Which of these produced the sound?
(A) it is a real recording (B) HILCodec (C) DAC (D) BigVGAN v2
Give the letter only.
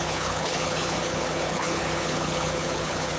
B